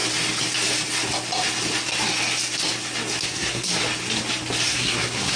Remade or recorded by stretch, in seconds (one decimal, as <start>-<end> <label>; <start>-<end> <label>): 0.0-3.2 recorded; 3.2-3.7 remade; 3.7-4.7 recorded; 4.7-5.4 remade